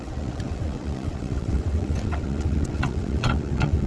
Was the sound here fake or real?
fake